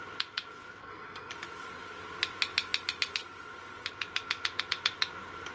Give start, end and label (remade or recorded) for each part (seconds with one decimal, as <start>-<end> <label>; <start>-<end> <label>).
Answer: 0.0-0.8 recorded; 0.8-1.3 remade; 1.3-5.5 recorded